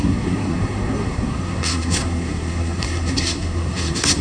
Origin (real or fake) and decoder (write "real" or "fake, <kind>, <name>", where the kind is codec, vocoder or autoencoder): fake, codec, SNAC